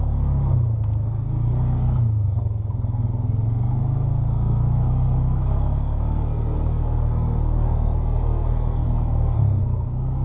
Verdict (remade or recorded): remade